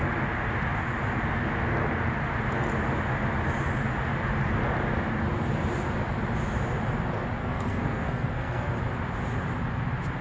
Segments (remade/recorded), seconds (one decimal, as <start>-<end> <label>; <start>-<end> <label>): 0.0-7.4 recorded; 7.4-8.7 remade; 8.7-10.2 recorded